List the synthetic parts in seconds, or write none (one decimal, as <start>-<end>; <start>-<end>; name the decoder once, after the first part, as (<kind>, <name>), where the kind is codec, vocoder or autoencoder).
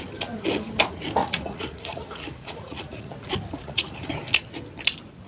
1.2-3.1 (vocoder, Vocos); 3.6-4.1